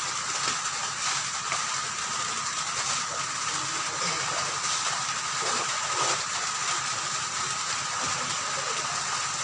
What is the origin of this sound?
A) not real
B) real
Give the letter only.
B